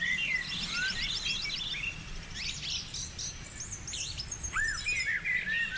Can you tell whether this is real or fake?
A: fake